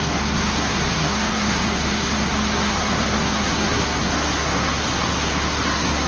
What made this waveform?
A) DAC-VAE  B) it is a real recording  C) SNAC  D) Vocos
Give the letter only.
C